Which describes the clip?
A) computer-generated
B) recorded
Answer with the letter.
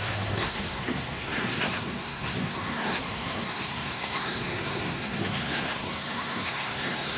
A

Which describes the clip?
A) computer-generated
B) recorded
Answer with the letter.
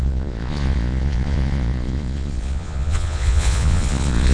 A